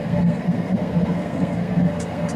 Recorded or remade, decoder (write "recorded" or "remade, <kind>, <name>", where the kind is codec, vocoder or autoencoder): remade, codec, SNAC